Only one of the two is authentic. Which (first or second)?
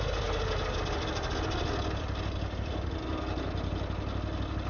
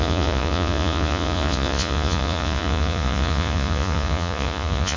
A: first